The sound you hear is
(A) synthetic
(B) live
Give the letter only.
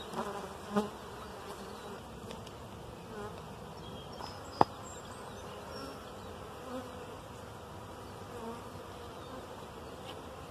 B